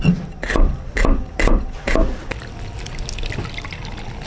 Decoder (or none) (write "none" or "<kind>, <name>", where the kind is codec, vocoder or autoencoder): none